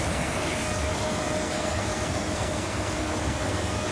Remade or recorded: remade